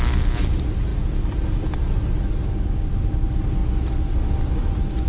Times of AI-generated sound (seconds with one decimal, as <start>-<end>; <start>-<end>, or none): none